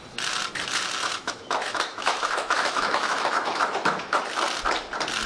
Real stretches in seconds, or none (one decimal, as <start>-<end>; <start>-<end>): 0.0-1.0; 4.2-5.3